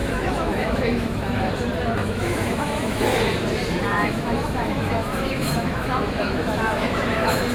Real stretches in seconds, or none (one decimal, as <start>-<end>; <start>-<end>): 1.5-2.0; 3.2-3.9